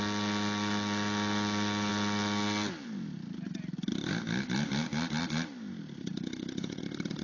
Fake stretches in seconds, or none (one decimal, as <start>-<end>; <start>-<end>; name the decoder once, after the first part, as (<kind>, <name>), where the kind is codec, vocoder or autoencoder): 6.1-6.8 (vocoder, Vocos)